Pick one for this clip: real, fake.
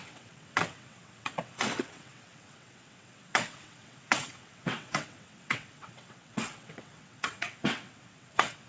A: fake